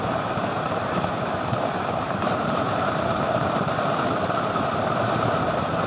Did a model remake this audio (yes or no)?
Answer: yes